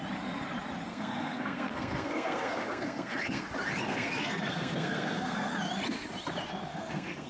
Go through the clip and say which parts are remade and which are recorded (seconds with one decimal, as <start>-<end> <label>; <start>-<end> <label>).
0.0-0.9 recorded; 0.9-3.5 remade; 3.5-3.9 recorded; 3.9-5.5 remade; 5.5-6.7 recorded; 6.7-7.3 remade